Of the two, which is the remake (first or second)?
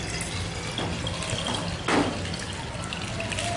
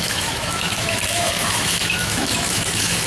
second